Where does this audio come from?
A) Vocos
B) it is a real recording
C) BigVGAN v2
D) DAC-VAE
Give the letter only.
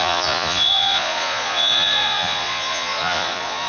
A